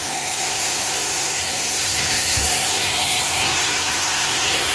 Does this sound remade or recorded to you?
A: remade